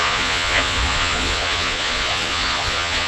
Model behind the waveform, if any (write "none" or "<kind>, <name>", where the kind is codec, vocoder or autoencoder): vocoder, Vocos